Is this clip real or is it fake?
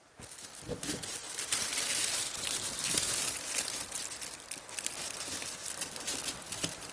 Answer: real